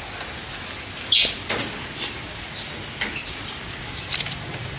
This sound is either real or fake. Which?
real